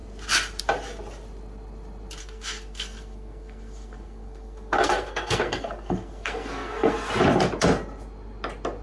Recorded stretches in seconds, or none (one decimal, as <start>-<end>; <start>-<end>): 0.0-2.2; 7.1-8.8